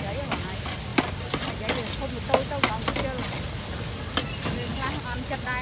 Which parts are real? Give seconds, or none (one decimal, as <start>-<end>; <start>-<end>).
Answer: 0.0-5.6